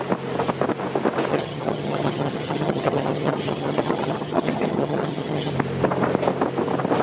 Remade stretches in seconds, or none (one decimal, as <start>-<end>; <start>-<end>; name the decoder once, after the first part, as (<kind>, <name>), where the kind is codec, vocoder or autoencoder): 1.3-5.5 (vocoder, HiFi-GAN)